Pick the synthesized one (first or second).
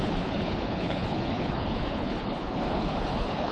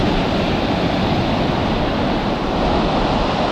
first